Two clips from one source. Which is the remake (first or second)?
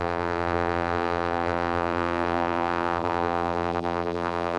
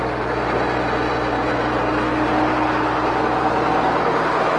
first